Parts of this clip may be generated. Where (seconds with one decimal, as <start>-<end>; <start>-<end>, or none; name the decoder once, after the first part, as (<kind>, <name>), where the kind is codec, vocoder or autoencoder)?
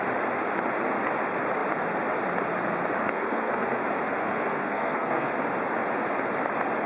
3.0-3.8 (codec, SNAC); 4.2-5.3